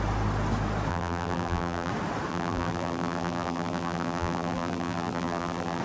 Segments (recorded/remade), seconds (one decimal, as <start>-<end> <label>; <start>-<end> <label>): 0.0-0.9 recorded; 0.9-1.9 remade; 1.9-2.3 recorded; 2.3-5.8 remade